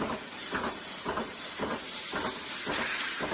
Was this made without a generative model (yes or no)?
yes